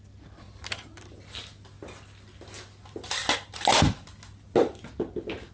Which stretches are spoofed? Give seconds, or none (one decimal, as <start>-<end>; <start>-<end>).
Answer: none